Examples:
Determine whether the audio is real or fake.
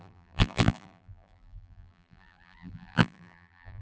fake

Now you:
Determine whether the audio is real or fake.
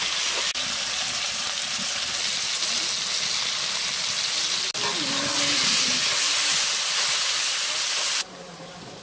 real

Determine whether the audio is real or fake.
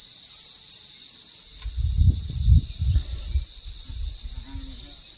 real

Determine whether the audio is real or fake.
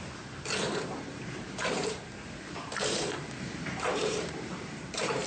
fake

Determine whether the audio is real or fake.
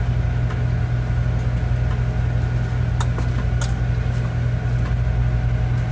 real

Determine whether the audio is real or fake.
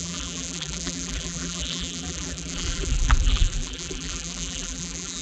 fake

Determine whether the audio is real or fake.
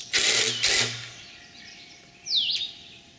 fake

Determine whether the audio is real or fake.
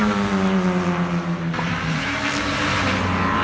fake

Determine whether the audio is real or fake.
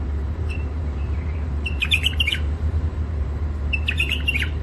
fake